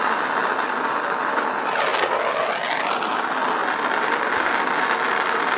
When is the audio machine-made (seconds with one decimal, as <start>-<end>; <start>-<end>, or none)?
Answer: none